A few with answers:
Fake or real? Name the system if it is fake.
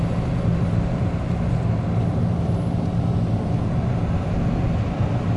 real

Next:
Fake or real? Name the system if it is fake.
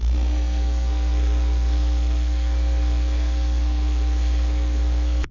fake, codec, SNAC